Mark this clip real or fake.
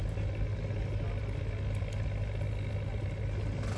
real